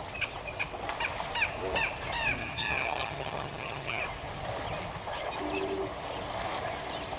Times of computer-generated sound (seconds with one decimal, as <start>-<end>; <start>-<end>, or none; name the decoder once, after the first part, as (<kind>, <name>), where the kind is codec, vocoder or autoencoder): 2.4-4.0 (vocoder, HiFi-GAN)